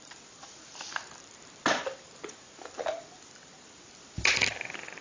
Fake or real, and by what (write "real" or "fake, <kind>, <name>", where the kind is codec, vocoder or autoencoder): real